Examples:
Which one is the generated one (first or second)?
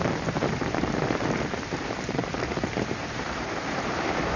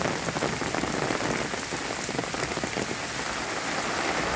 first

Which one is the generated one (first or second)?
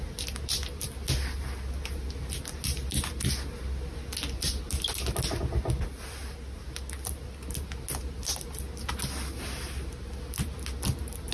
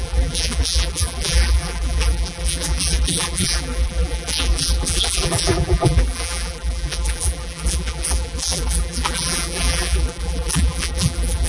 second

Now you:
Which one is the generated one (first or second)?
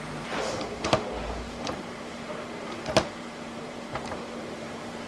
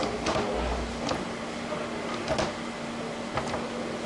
first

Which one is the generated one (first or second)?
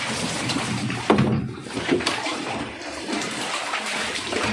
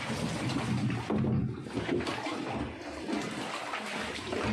first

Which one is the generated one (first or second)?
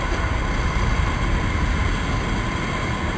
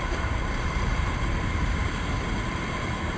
second